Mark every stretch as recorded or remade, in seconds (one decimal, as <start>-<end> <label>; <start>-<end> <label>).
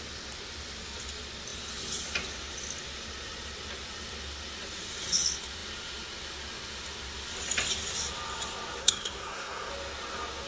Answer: 0.0-8.8 recorded; 8.8-9.7 remade; 9.7-10.5 recorded